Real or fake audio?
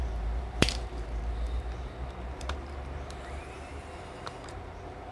fake